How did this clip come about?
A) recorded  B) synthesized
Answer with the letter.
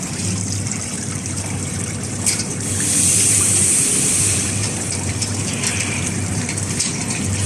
B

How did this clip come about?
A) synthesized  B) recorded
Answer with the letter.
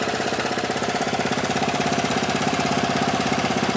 A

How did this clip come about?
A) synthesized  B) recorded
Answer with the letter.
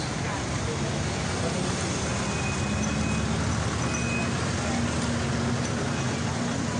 B